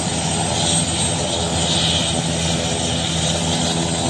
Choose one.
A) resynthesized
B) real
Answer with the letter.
B